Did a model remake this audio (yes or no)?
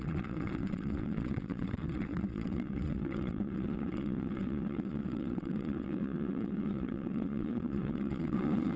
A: yes